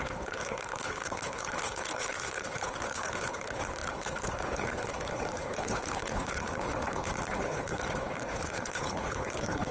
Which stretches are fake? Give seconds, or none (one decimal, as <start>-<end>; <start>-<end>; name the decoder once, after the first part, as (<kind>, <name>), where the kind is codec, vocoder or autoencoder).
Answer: 0.0-9.7 (codec, HILCodec)